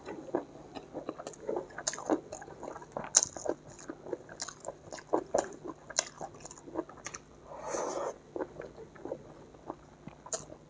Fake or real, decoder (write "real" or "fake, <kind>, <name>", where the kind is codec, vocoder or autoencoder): real